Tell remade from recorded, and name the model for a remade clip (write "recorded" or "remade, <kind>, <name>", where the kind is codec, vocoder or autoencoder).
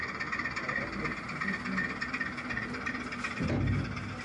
recorded